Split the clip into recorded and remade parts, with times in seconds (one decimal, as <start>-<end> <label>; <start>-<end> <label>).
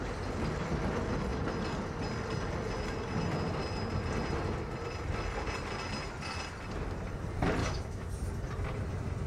0.0-7.6 recorded; 7.6-8.1 remade; 8.1-9.3 recorded